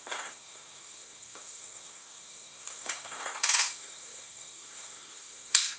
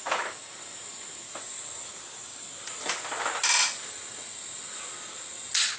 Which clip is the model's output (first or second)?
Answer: first